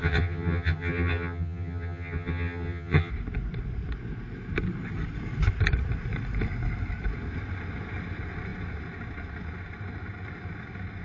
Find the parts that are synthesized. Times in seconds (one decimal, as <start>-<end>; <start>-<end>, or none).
0.0-3.1